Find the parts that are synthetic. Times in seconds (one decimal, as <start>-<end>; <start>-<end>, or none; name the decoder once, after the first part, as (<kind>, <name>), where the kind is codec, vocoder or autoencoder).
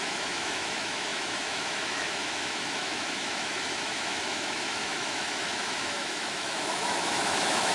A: 0.0-7.7 (autoencoder, DAC-VAE)